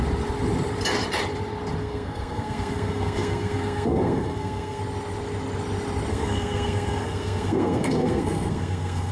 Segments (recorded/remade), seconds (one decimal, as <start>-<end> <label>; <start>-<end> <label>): 0.0-1.8 recorded; 1.8-4.8 remade; 4.8-6.1 recorded; 6.1-9.1 remade